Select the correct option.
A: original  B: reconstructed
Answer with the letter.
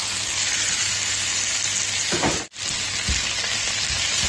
A